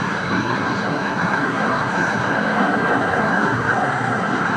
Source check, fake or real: fake